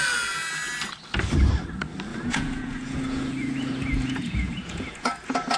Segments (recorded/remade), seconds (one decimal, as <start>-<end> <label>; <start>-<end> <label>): 0.0-2.1 recorded; 2.1-5.6 remade